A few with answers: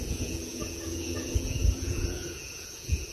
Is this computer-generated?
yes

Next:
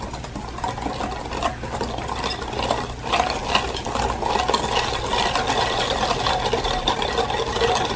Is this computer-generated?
no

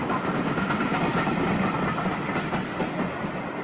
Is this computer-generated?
no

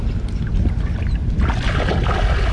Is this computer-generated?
no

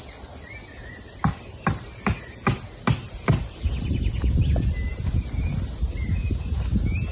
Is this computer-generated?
no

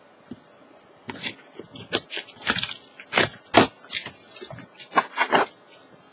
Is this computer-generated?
no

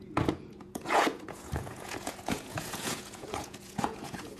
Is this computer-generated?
yes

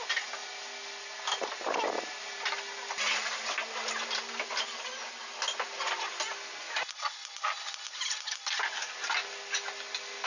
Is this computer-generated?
no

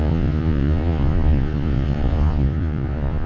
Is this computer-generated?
yes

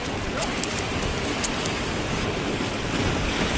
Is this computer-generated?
no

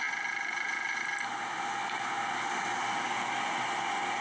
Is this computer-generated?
no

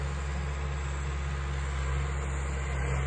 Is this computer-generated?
no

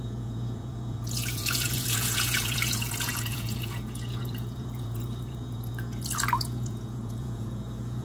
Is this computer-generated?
yes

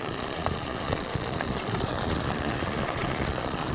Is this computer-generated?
yes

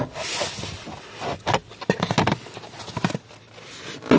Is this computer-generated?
no